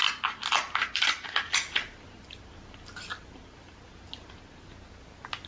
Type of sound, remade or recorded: recorded